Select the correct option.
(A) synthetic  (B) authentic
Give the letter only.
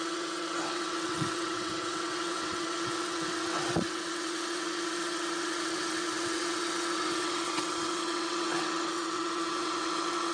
A